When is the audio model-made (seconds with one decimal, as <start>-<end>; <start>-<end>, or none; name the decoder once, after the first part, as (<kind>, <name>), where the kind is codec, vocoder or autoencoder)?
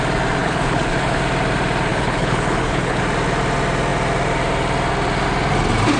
0.4-1.2 (codec, HILCodec); 1.9-3.0